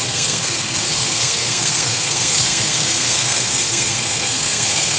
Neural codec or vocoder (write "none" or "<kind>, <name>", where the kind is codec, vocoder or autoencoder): codec, SNAC